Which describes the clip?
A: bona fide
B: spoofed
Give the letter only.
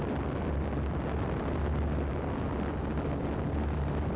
A